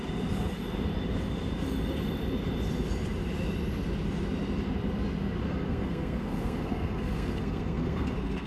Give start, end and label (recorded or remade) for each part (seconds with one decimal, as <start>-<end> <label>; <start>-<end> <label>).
0.0-5.4 recorded; 5.4-8.5 remade